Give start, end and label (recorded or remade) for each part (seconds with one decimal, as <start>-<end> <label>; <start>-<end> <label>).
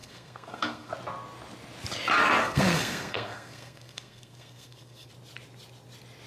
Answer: 0.0-0.9 remade; 0.9-2.4 recorded; 2.4-5.1 remade; 5.1-6.3 recorded